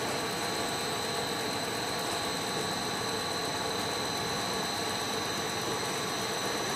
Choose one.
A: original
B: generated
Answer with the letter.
A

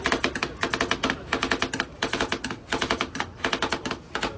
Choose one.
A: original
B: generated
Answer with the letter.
A